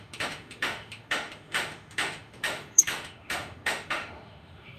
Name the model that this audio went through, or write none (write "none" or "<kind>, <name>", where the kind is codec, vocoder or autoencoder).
autoencoder, DAC-VAE